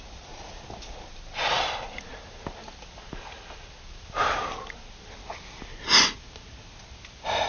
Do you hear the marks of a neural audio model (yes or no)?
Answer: no